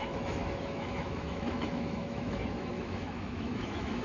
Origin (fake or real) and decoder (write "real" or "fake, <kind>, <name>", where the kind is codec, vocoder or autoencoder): fake, autoencoder, DAC-VAE